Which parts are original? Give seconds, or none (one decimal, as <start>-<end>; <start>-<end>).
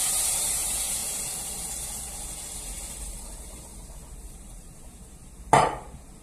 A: 1.0-3.0; 3.7-4.3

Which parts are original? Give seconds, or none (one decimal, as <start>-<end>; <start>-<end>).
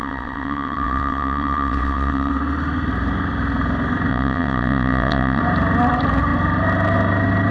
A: 2.3-4.1; 5.4-7.5